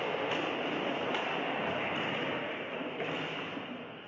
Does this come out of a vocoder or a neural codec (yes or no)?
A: yes